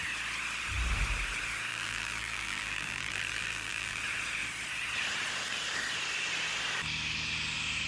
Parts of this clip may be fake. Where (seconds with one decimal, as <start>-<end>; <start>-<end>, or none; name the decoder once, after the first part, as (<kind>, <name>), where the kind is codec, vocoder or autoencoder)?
1.7-4.0 (vocoder, BigVGAN v2)

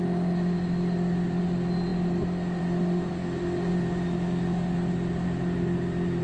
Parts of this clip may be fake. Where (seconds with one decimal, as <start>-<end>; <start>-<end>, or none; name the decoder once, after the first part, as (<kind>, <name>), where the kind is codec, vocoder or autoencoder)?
none

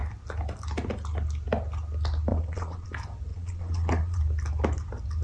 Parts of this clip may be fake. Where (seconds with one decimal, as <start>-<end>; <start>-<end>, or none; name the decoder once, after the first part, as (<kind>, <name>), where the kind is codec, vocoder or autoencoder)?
2.3-2.9 (vocoder, Vocos); 3.3-4.2

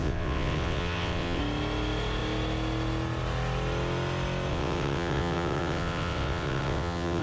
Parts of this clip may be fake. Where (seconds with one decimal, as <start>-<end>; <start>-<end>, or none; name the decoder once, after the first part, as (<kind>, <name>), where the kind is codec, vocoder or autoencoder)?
0.0-1.4 (vocoder, WaveNeXt); 4.5-7.2